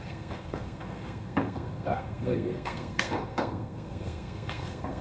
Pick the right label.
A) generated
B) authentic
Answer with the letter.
A